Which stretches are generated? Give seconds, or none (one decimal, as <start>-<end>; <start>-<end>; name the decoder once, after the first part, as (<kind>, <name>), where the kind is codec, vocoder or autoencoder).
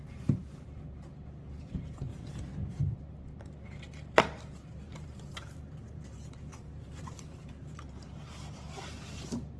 0.0-1.1 (vocoder, BigVGAN v2); 1.7-2.1; 2.8-9.6